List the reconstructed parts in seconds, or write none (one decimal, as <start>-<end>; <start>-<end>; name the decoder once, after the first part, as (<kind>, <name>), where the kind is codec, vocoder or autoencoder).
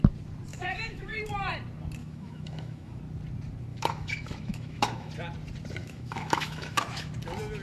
0.5-1.2 (autoencoder, DAC-VAE); 2.0-3.0; 3.7-5.1; 5.8-7.1